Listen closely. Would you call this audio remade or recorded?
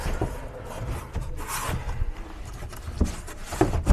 recorded